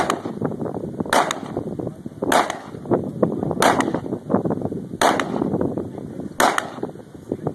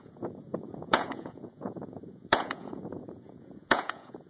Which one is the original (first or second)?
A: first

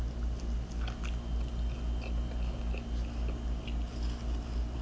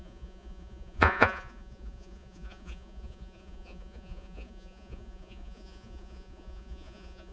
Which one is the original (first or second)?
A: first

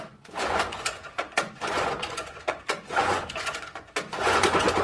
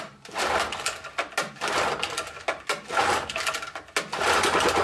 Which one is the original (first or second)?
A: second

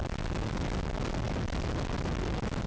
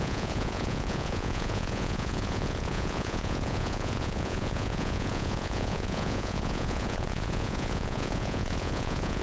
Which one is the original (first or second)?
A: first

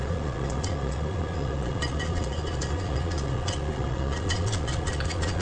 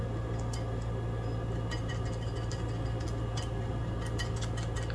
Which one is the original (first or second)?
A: second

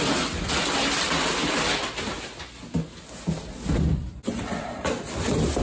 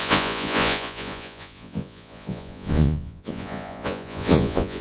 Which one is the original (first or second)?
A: first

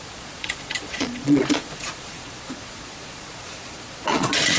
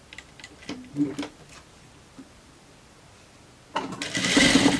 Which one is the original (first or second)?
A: second